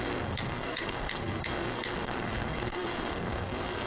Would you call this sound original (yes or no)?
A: no